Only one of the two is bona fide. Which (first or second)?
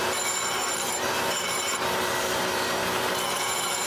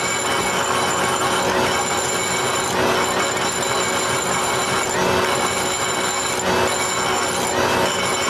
second